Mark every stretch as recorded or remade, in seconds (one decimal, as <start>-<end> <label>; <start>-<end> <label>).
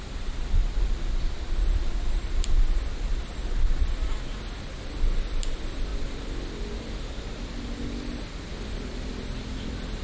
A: 0.0-10.0 recorded